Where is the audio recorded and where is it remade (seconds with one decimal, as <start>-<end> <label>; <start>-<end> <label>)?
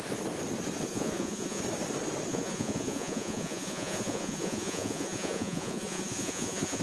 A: 0.0-0.9 recorded; 0.9-1.6 remade; 1.6-2.3 recorded; 2.3-6.8 remade